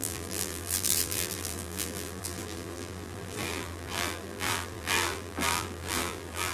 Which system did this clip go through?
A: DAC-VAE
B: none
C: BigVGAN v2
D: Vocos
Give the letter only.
C